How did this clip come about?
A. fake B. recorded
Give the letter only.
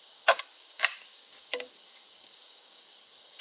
A